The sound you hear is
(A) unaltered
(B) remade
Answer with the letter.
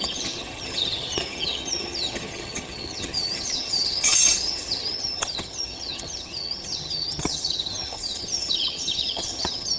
B